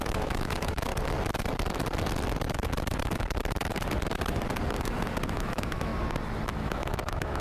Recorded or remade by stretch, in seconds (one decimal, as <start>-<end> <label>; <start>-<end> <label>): 0.0-0.9 remade; 0.9-5.3 recorded; 5.3-5.9 remade; 5.9-6.5 recorded; 6.5-7.4 remade